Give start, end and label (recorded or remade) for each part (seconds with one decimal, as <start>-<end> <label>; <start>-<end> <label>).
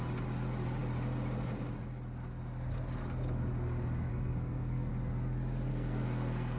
0.0-4.1 recorded; 4.1-4.9 remade; 4.9-5.7 recorded; 5.7-6.6 remade